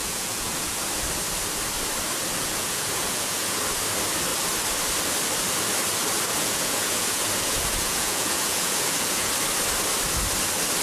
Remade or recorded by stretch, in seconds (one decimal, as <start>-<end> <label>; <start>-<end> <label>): 0.0-0.9 remade; 0.9-2.4 recorded; 2.4-3.6 remade; 3.6-6.3 recorded; 6.3-9.3 remade; 9.3-10.8 recorded